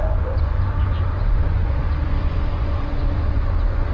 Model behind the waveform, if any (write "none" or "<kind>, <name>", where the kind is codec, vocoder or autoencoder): vocoder, Vocos